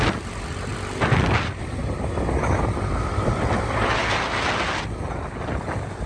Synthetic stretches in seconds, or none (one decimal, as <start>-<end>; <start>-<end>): 0.0-1.8; 3.0-4.0; 5.2-6.1